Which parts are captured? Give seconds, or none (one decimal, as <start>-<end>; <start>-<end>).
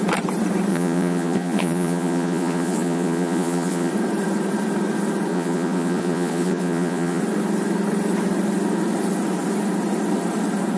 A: 0.0-0.7; 3.9-5.3; 7.2-10.8